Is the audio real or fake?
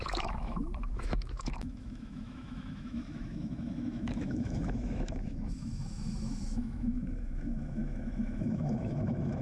fake